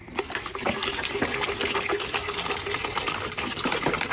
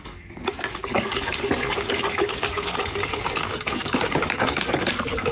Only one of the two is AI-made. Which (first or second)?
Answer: second